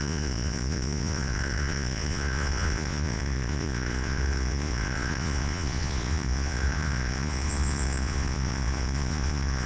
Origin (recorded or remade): remade